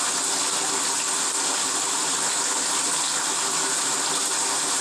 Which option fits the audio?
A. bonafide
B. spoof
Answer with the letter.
A